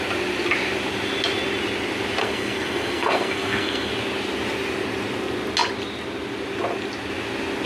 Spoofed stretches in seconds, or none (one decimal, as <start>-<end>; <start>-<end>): 2.2-3.9